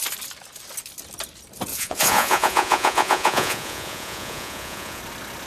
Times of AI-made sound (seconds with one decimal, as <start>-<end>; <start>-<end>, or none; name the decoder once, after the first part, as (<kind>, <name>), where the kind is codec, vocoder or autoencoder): 1.7-5.0 (vocoder, Vocos)